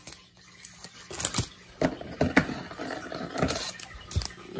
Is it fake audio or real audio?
real